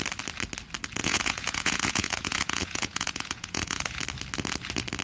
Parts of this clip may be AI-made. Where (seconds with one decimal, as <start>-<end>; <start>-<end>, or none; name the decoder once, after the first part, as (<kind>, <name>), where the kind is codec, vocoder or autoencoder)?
1.0-4.0 (vocoder, Vocos)